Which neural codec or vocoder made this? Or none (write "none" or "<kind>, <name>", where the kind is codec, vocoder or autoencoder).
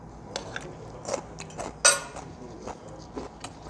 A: none